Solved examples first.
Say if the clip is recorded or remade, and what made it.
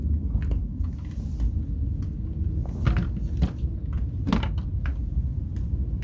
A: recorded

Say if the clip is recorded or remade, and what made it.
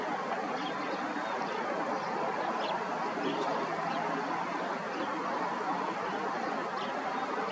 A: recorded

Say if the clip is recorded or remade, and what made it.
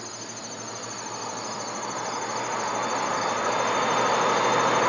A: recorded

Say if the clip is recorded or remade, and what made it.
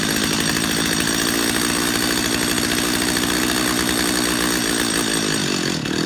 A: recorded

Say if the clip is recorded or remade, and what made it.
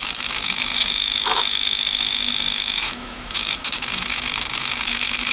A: remade, autoencoder, DAC-VAE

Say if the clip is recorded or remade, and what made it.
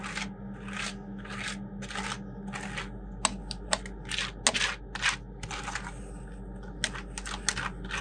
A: recorded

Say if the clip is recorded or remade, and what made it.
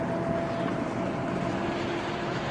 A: recorded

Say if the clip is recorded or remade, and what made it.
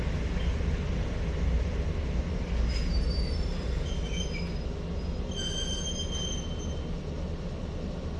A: recorded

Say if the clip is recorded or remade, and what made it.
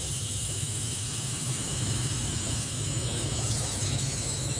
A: remade, autoencoder, DAC-VAE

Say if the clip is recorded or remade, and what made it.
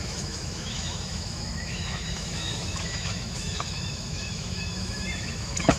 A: remade, autoencoder, DAC-VAE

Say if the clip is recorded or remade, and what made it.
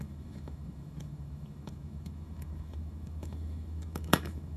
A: remade, autoencoder, DAC-VAE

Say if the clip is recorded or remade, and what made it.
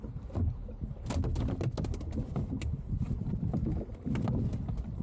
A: recorded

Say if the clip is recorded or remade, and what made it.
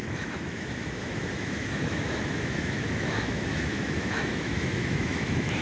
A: remade, autoencoder, DAC-VAE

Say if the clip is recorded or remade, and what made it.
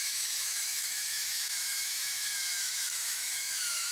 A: remade, autoencoder, DAC-VAE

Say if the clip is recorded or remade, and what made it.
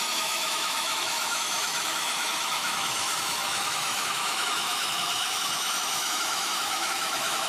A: remade, autoencoder, DAC-VAE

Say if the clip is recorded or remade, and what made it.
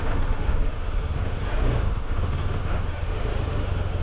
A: remade, autoencoder, DAC-VAE